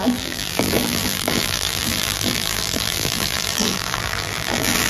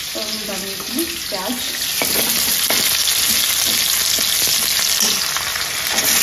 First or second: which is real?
second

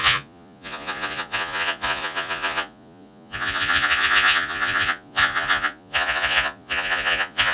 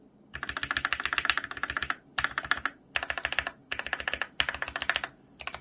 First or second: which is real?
second